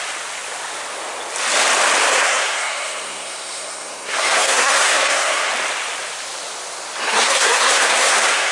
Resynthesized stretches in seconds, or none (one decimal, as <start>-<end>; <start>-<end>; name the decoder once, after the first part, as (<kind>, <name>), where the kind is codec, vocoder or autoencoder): 2.1-5.5 (codec, SNAC); 7.0-8.5

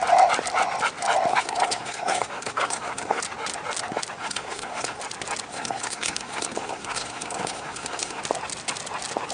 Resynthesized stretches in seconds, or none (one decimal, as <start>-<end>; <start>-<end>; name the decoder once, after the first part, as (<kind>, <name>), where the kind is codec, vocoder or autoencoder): 1.3-3.2 (codec, SNAC); 4.2-5.0; 5.5-8.2

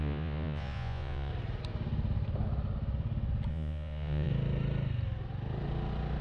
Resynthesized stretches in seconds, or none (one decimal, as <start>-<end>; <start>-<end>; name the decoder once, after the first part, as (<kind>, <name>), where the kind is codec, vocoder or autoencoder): 0.0-1.3 (vocoder, Vocos); 3.5-4.3

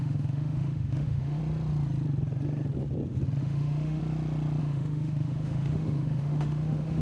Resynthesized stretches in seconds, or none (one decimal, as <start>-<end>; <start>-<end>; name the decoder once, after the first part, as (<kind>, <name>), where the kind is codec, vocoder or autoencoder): 0.0-1.4 (autoencoder, DAC-VAE); 3.4-4.0; 4.6-7.0

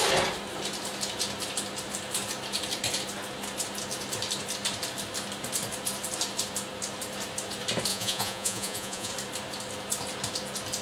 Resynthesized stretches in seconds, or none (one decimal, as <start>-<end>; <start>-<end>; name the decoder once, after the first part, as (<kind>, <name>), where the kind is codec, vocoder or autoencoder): 7.9-9.1 (vocoder, Vocos)

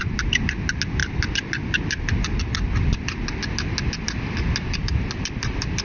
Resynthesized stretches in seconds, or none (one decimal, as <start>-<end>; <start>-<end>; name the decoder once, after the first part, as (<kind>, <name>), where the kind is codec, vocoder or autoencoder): none

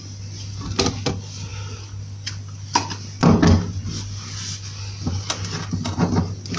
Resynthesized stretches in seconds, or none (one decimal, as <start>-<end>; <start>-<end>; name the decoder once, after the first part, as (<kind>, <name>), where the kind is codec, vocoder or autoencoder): none